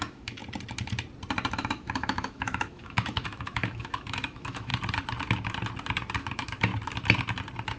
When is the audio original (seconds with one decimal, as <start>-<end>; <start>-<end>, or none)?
0.4-1.5; 4.7-6.2; 6.7-7.8